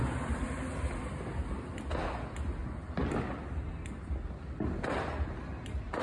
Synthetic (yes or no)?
no